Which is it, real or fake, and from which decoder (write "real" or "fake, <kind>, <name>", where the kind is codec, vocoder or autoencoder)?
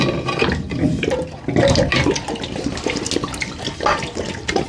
real